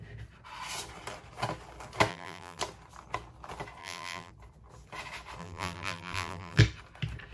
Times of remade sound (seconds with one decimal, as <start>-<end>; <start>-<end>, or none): 2.1-2.6; 3.8-4.3; 5.4-6.6